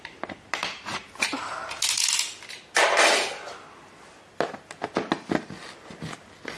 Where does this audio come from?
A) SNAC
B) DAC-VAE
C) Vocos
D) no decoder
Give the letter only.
D